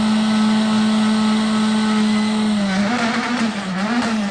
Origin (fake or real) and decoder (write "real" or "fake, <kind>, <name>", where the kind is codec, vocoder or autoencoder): real